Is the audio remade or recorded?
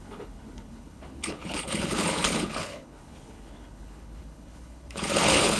remade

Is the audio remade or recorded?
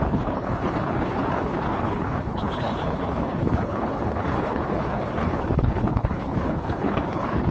remade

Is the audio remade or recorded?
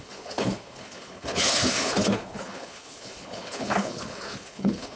remade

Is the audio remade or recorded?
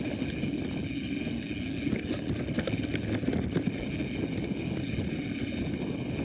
recorded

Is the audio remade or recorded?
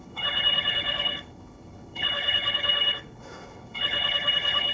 remade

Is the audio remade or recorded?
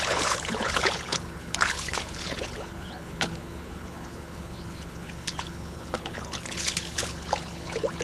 remade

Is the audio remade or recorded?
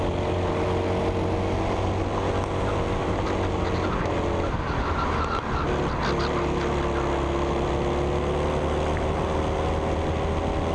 recorded